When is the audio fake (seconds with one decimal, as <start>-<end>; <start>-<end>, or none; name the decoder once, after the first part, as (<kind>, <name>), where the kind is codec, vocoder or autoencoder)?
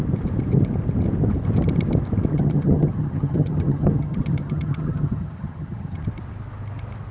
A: 2.3-6.0 (vocoder, HiFi-GAN)